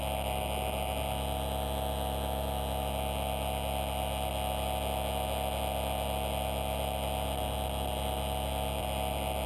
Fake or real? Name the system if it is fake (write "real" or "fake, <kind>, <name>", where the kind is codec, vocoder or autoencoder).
real